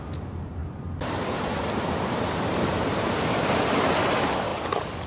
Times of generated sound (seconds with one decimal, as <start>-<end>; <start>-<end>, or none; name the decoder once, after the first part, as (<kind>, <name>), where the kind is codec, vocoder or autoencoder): 0.6-3.7 (vocoder, BigVGAN v2)